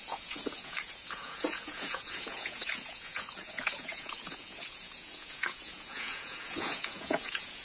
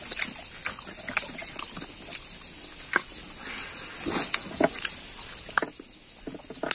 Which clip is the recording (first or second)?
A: second